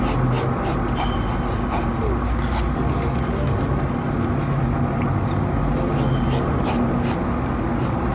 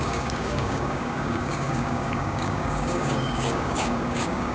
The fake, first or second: second